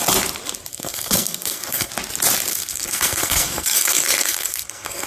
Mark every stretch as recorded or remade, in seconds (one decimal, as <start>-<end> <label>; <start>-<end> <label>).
0.0-0.7 recorded; 0.7-1.9 remade; 1.9-2.5 recorded; 2.5-5.1 remade